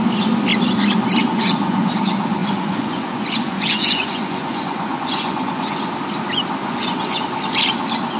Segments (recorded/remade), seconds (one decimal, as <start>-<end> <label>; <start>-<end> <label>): 0.0-1.2 recorded; 1.2-1.9 remade; 1.9-2.4 recorded; 2.4-5.9 remade; 5.9-6.6 recorded; 6.6-7.2 remade; 7.2-8.2 recorded